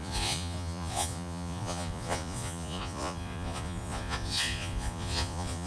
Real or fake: fake